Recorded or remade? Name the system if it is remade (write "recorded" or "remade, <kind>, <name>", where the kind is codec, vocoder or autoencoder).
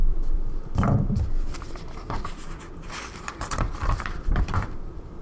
remade, vocoder, BigVGAN v2